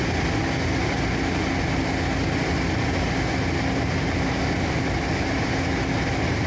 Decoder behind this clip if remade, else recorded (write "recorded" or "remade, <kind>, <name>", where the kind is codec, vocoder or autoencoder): recorded